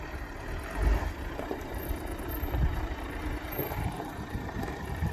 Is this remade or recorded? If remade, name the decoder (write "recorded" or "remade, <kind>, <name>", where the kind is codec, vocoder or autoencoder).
remade, vocoder, BigVGAN v2